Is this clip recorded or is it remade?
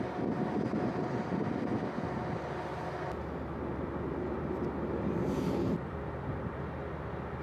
recorded